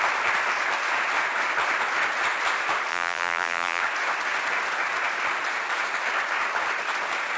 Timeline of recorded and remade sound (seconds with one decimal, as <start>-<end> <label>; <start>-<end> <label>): 0.0-2.9 recorded; 2.9-3.8 remade; 3.8-7.4 recorded